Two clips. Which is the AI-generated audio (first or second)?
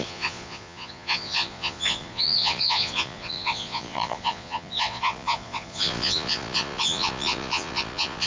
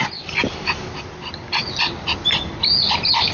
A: first